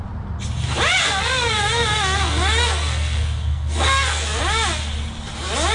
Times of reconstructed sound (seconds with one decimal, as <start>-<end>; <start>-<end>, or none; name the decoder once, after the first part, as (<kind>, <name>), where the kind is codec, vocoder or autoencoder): 1.0-4.4 (codec, SNAC)